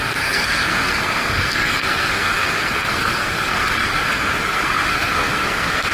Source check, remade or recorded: remade